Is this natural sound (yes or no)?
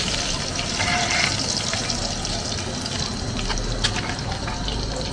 yes